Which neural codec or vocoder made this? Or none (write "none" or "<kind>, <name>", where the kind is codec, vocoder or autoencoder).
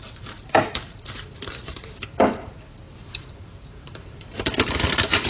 vocoder, BigVGAN v2